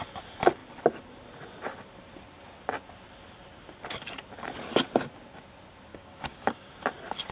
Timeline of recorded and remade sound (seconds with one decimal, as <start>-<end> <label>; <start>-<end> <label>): 0.0-5.9 recorded; 5.9-6.7 remade; 6.7-7.3 recorded